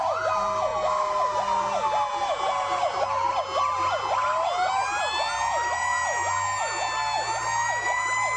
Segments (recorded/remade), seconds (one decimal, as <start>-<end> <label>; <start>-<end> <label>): 0.0-8.4 recorded